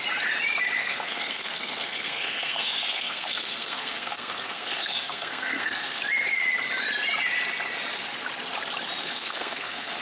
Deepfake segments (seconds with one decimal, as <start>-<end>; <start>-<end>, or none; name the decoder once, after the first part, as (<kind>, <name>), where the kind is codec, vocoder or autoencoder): 0.8-6.0 (codec, SNAC); 9.0-10.0